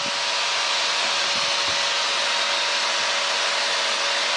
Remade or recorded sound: recorded